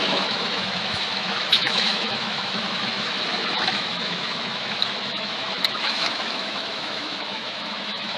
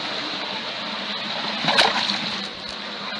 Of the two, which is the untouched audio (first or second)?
second